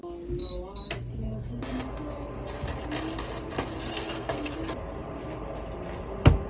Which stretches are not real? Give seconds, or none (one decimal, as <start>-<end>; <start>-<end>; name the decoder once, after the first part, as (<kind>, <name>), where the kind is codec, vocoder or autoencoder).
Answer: 3.9-4.5 (codec, SNAC)